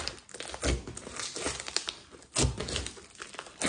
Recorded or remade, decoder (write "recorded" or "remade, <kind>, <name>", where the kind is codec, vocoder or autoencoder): recorded